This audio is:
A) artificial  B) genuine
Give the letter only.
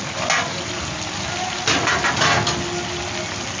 B